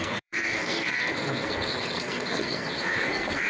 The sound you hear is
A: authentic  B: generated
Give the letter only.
B